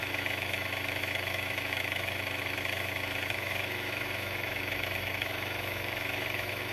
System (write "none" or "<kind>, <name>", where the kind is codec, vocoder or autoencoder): autoencoder, DAC-VAE